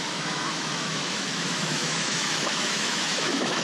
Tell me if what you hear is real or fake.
fake